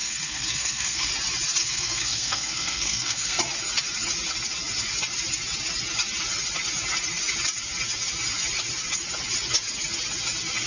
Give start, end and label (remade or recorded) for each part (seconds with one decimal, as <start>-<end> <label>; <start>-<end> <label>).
0.0-1.1 remade; 1.1-1.6 recorded; 1.6-3.4 remade; 3.4-10.7 recorded